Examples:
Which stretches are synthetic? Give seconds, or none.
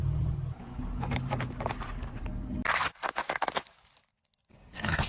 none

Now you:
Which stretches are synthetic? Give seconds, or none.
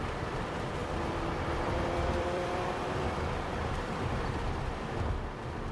0.8-4.2 (vocoder, BigVGAN v2)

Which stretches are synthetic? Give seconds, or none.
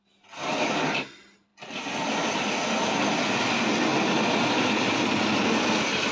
none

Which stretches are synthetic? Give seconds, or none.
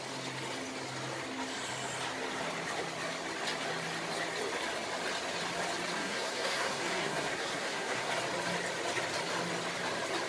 6.0-8.1 (codec, SNAC)